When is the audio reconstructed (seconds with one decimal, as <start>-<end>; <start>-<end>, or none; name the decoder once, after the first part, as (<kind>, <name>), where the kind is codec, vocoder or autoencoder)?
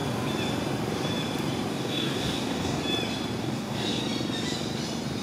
1.7-2.8 (codec, DAC); 3.4-4.0